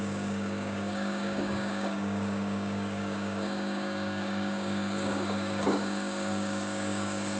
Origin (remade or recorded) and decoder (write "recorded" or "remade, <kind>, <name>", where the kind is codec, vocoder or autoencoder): remade, codec, DAC